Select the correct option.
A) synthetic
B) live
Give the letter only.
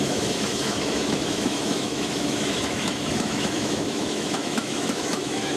A